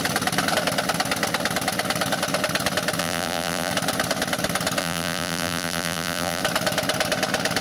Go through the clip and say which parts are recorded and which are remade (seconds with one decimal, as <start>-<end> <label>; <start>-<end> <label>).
0.0-3.0 recorded; 3.0-3.7 remade; 3.7-4.8 recorded; 4.8-6.4 remade; 6.4-7.6 recorded